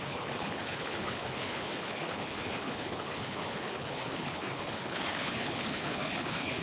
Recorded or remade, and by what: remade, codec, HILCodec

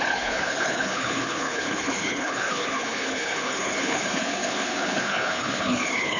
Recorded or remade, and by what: remade, codec, HILCodec